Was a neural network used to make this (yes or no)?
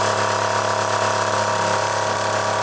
no